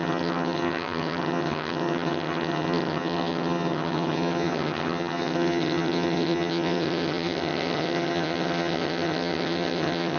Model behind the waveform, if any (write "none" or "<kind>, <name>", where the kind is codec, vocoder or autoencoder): vocoder, HiFi-GAN